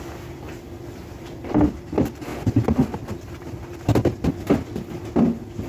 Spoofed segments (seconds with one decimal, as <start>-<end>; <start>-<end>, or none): none